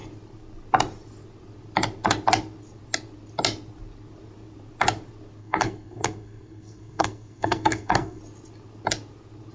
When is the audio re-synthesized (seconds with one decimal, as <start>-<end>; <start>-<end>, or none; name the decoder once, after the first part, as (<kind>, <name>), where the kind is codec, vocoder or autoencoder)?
5.4-8.2 (codec, SNAC)